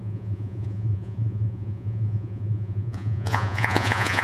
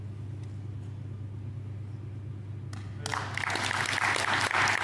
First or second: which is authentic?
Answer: second